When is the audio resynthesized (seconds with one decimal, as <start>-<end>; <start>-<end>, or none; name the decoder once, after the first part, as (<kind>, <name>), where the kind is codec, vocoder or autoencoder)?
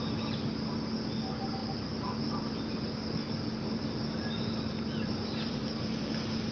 none